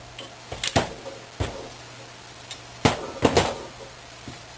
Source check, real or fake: real